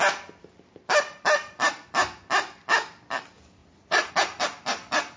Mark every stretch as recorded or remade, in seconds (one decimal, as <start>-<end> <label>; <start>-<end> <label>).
0.0-3.6 recorded; 3.6-4.1 remade; 4.1-5.2 recorded